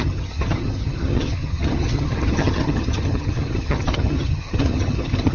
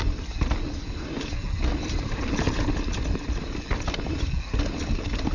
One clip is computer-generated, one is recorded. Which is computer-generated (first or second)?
first